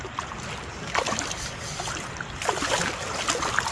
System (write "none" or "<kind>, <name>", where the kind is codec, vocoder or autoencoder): none